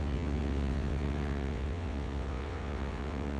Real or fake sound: fake